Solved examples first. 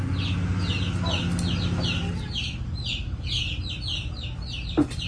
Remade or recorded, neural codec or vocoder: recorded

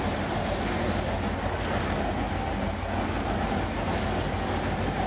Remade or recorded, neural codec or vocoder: recorded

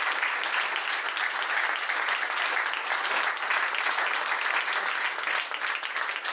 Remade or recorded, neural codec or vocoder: recorded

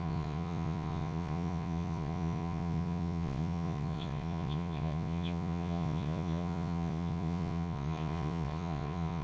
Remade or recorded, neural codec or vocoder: remade, vocoder, Vocos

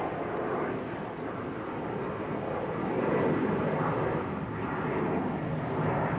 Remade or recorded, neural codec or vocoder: recorded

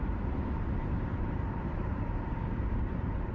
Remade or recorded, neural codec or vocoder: remade, vocoder, BigVGAN v2